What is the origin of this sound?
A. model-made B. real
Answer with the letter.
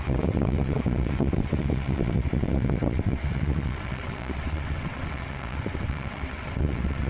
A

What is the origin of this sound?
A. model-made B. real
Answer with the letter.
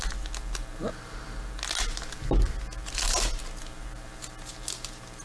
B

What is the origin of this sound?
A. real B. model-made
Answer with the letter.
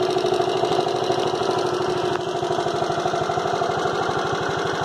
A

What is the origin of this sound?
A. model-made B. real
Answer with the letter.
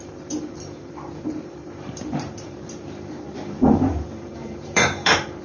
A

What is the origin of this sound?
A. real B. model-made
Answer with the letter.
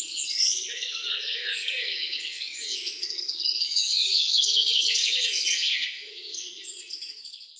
B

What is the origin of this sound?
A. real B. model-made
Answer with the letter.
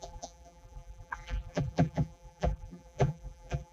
B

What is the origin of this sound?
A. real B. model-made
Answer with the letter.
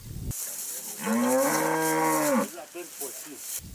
A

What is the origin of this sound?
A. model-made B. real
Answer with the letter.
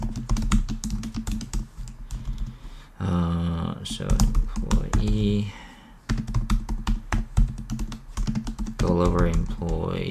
B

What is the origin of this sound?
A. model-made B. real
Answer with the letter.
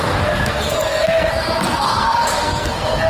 A